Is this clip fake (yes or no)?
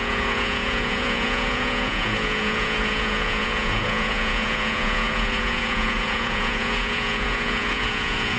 yes